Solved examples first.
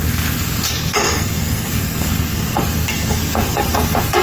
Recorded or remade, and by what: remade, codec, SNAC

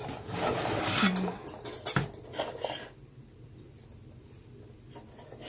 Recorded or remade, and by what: recorded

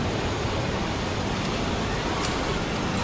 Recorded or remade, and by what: recorded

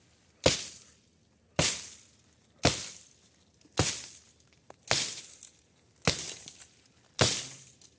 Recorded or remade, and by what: recorded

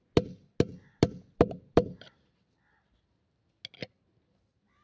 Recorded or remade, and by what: recorded